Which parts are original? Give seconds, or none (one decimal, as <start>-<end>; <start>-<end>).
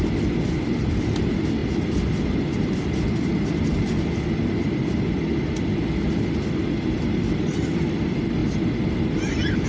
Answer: 0.0-9.7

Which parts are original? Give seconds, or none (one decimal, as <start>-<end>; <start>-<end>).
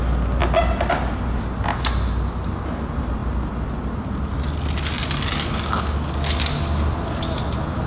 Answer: 0.0-7.9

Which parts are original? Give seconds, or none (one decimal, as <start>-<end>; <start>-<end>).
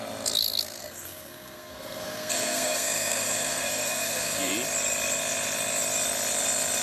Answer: 0.0-0.8; 4.5-6.8